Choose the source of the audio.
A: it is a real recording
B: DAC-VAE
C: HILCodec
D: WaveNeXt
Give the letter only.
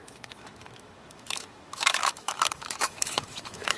B